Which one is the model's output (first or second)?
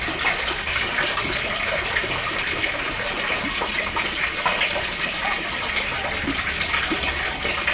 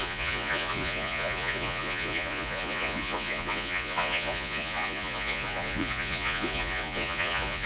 second